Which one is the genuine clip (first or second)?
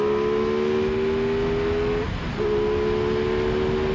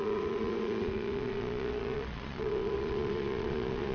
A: first